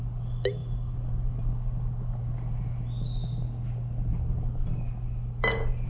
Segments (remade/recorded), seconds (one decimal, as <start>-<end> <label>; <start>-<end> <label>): 0.0-5.9 recorded

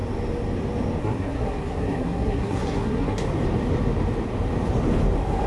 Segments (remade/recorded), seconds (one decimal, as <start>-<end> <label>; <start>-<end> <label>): 0.0-1.0 recorded; 1.0-3.2 remade; 3.2-5.5 recorded